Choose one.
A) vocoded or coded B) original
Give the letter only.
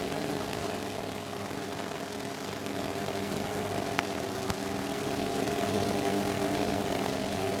A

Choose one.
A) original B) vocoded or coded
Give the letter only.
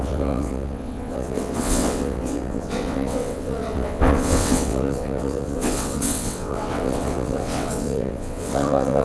B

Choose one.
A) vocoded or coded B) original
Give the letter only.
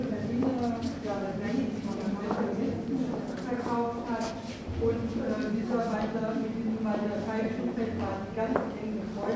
B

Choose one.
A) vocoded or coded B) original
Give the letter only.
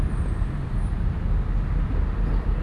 B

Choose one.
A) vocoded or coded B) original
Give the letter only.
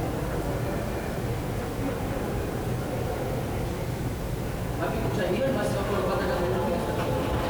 B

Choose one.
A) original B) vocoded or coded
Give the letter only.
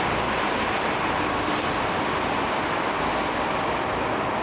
A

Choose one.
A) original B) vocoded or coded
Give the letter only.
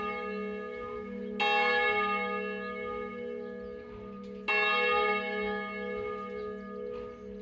A